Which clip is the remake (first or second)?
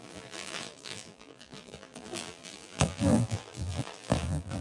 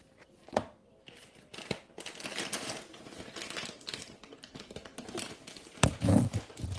first